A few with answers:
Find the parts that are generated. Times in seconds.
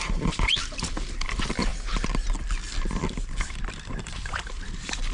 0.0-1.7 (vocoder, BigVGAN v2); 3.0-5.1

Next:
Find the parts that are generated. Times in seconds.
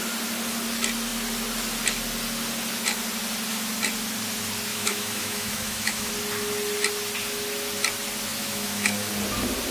4.7-6.1 (autoencoder, DAC-VAE); 8.3-9.1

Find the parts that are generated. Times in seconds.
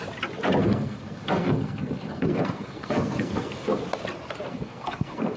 0.6-3.8 (codec, SNAC); 4.5-5.4